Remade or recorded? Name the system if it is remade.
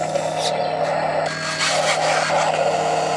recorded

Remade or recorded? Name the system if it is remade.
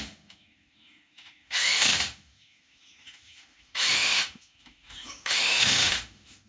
remade, autoencoder, DAC-VAE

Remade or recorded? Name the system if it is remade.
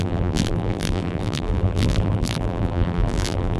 remade, vocoder, BigVGAN v2